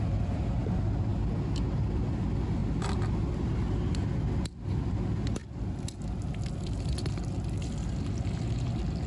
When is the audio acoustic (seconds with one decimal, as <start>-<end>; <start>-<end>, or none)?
0.0-9.1